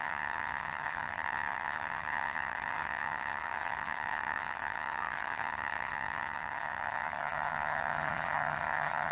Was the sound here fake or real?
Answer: fake